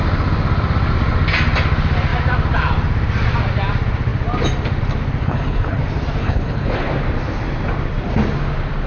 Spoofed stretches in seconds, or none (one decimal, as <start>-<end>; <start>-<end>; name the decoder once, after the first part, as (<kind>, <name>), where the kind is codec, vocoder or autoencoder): 5.2-5.8 (codec, HILCodec); 6.2-6.9